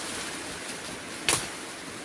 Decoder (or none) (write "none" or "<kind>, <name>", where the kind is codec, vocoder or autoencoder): none